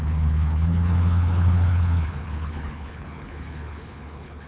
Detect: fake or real fake